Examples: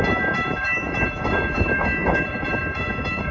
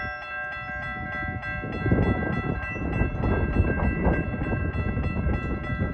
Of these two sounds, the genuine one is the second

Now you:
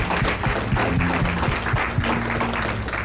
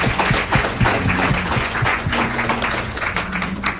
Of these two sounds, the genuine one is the first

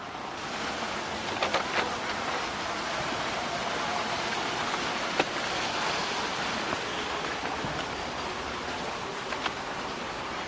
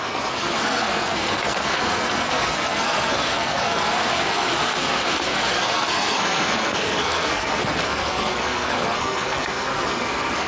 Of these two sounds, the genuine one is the first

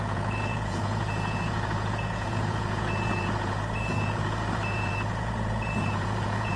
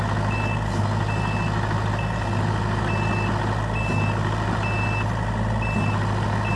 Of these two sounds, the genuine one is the second